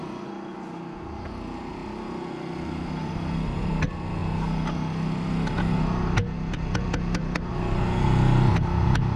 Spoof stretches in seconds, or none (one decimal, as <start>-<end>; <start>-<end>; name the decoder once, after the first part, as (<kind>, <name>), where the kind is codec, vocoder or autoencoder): none